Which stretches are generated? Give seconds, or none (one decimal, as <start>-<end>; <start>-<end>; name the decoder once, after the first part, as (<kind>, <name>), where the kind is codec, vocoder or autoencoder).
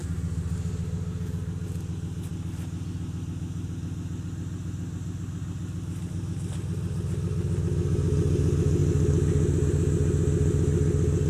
none